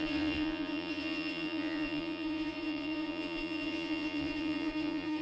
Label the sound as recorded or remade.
remade